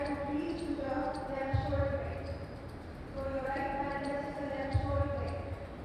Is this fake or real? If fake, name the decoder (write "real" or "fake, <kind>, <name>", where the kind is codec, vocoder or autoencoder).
fake, vocoder, BigVGAN v2